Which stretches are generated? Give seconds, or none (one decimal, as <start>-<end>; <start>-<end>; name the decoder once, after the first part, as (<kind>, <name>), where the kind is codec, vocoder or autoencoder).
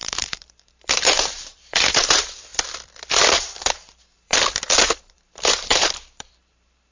0.0-2.5 (vocoder, BigVGAN v2); 3.4-6.9